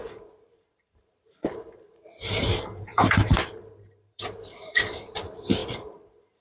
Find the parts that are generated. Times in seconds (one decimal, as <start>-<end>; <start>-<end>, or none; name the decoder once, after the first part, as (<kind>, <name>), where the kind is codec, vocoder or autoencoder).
0.0-6.4 (vocoder, BigVGAN v2)

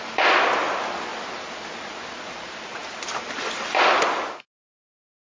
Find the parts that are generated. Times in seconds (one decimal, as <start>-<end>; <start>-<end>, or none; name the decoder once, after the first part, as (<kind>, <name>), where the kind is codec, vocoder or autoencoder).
none

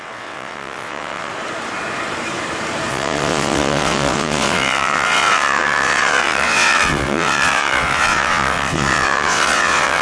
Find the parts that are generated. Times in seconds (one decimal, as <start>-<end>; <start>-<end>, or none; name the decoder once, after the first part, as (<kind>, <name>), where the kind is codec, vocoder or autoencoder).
0.0-1.3 (vocoder, WaveNeXt); 2.9-10.0

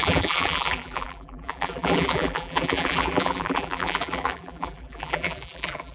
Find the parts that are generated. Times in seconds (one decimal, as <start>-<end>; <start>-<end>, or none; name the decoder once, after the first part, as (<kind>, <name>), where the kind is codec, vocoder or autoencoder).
0.0-5.9 (vocoder, BigVGAN v2)

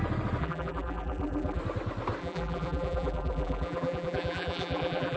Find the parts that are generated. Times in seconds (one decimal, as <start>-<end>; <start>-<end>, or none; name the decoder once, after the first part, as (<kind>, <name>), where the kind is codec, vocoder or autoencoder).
0.4-1.6 (vocoder, BigVGAN v2); 2.2-5.2